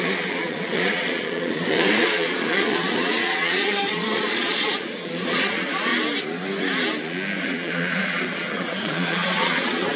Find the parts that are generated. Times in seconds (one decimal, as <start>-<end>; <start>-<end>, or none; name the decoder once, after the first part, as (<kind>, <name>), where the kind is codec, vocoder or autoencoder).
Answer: 0.0-5.9 (vocoder, Vocos); 7.4-10.0